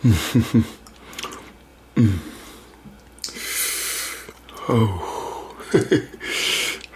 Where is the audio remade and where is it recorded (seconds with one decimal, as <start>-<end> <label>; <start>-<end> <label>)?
0.0-7.0 recorded

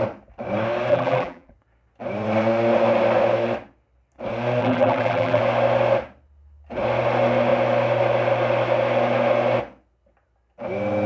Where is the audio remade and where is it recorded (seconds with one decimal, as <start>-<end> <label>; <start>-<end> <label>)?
0.0-0.9 recorded; 0.9-1.5 remade; 1.5-4.6 recorded; 4.6-5.4 remade; 5.4-11.1 recorded

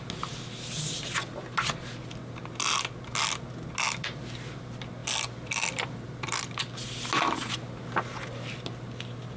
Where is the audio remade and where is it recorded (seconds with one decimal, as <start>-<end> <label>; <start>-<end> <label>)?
0.0-5.0 recorded; 5.0-6.4 remade; 6.4-9.4 recorded